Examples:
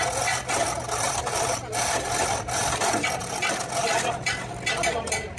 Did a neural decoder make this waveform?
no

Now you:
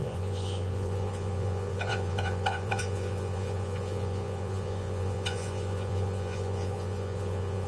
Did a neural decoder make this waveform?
yes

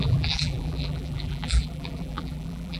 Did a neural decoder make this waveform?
yes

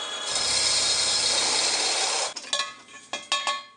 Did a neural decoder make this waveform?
no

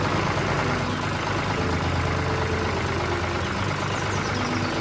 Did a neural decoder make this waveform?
no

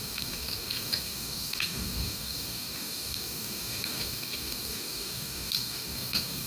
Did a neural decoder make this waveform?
yes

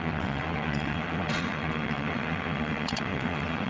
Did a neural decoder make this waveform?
yes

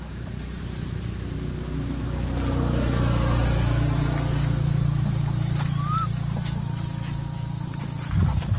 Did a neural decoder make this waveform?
no